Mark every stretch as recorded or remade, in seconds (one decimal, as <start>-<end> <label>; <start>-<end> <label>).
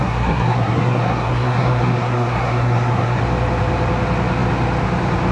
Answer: 0.0-3.2 remade; 3.2-5.3 recorded